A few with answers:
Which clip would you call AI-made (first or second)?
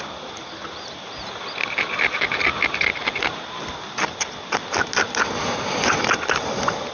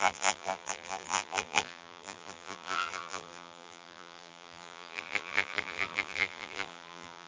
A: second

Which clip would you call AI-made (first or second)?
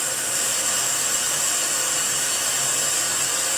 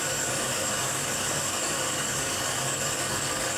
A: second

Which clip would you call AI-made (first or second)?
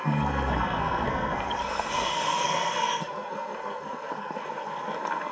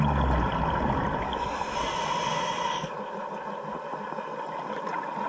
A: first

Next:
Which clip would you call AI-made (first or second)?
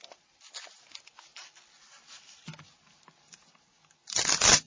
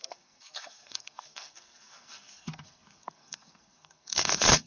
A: second